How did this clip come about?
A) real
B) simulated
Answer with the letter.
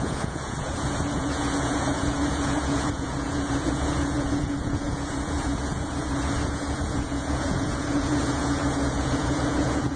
B